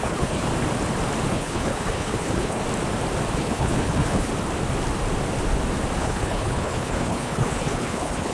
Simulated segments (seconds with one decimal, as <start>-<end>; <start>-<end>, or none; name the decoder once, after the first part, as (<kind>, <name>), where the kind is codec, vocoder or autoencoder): 0.0-0.5 (codec, HILCodec); 1.3-2.6; 3.3-4.3; 6.0-8.3